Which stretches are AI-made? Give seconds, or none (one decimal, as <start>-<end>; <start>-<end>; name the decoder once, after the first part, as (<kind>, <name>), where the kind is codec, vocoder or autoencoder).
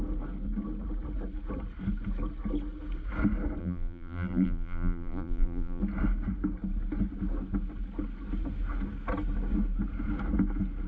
3.6-5.8 (vocoder, BigVGAN v2)